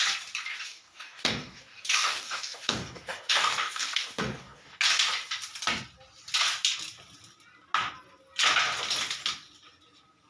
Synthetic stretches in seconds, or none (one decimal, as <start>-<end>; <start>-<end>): 0.5-4.8